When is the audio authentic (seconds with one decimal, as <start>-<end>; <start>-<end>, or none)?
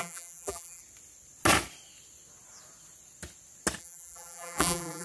0.8-3.8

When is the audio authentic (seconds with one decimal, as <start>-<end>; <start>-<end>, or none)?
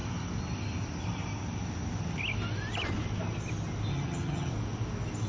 0.0-3.9; 4.5-5.3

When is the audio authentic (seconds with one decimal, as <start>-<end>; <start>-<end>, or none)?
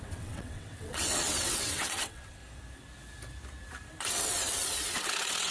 2.4-4.1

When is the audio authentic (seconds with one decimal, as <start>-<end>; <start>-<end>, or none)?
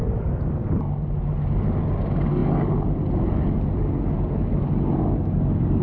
0.0-5.8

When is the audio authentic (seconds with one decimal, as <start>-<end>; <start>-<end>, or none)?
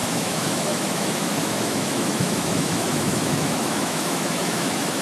none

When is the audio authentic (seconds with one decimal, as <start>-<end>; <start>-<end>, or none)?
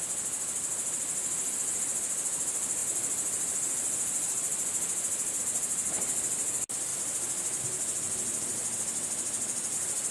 0.0-10.1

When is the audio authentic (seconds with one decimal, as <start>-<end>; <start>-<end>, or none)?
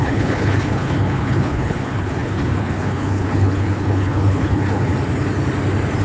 4.9-6.0